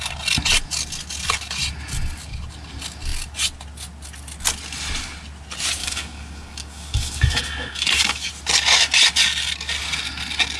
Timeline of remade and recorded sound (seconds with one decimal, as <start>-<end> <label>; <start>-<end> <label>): 0.0-5.8 recorded; 5.8-8.3 remade; 8.3-10.6 recorded